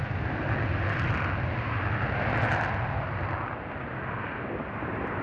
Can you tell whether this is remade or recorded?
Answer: recorded